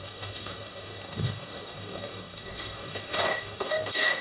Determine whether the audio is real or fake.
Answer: fake